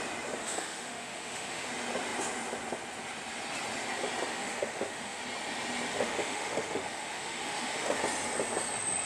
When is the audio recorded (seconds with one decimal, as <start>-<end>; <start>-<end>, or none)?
0.0-0.4; 1.7-4.3; 5.2-5.9; 8.0-9.1